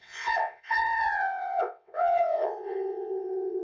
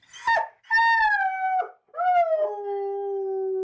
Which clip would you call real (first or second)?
second